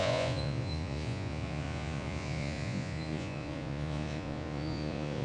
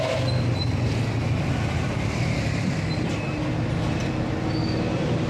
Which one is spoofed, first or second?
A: first